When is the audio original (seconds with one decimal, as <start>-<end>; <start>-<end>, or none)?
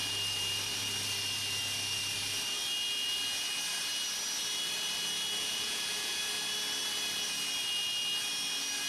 0.0-5.4; 6.2-8.9